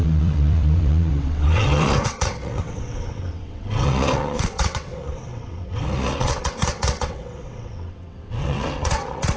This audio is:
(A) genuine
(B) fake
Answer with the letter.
B